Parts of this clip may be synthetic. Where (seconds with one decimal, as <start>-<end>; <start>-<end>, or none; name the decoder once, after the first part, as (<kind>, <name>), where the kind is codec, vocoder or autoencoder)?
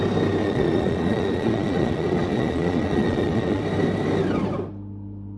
0.4-3.6 (vocoder, Vocos)